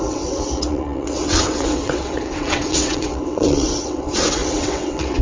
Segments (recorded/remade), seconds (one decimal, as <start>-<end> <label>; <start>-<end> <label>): 0.0-5.2 remade